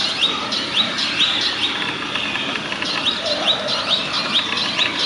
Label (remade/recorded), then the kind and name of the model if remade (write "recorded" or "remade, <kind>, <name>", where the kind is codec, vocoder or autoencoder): recorded